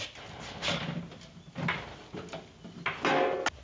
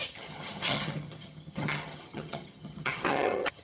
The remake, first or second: second